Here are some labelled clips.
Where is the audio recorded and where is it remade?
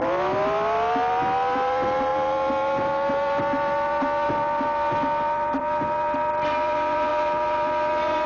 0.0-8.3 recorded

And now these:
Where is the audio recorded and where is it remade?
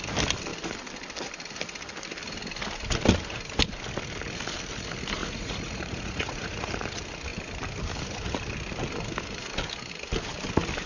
0.0-5.2 recorded; 5.2-6.7 remade; 6.7-10.9 recorded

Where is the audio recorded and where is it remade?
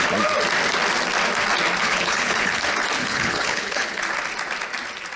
0.0-1.8 recorded; 1.8-2.6 remade; 2.6-3.0 recorded; 3.0-4.0 remade; 4.0-5.2 recorded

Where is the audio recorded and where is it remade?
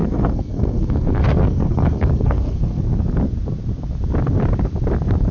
0.0-2.8 remade; 2.8-5.3 recorded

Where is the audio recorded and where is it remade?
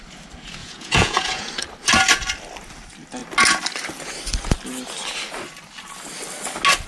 0.0-0.6 recorded; 0.6-1.5 remade; 1.5-6.9 recorded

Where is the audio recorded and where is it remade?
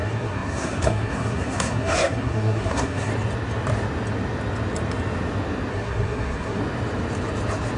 0.0-3.1 remade; 3.1-5.7 recorded; 5.7-6.6 remade; 6.6-7.8 recorded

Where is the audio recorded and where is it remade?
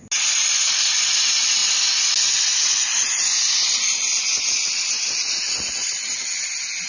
0.0-6.9 recorded